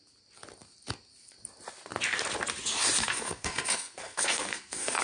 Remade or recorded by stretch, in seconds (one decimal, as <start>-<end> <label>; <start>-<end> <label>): 0.0-3.0 recorded; 3.0-5.0 remade